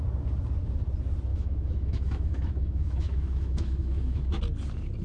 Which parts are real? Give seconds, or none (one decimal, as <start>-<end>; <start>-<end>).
0.0-1.3; 4.3-5.0